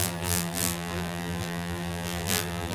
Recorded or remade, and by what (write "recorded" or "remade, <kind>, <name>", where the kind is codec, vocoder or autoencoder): remade, vocoder, BigVGAN v2